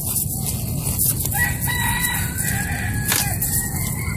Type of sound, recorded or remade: recorded